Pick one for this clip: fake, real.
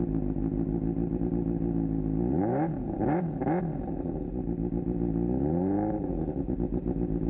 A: real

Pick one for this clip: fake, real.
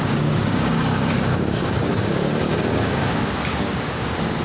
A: fake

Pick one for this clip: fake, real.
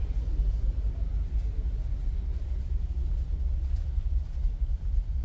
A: real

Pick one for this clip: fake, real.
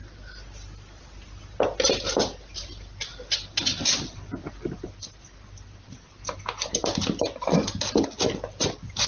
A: real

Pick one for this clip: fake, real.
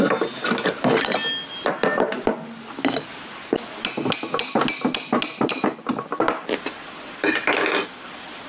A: real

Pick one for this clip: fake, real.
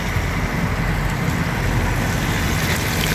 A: real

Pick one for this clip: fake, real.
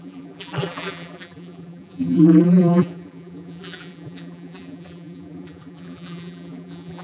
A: fake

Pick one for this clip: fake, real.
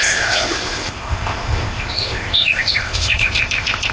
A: fake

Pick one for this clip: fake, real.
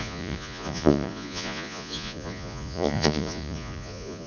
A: fake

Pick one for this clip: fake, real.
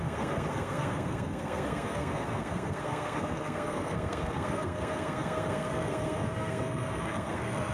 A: fake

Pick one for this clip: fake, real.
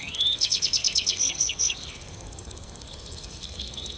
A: fake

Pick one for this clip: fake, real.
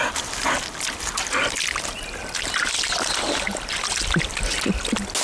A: real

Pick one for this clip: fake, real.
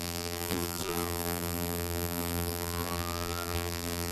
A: fake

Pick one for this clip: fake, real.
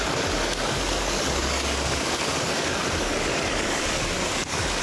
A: fake